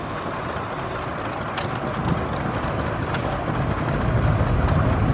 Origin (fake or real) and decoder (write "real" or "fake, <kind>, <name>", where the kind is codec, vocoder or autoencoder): real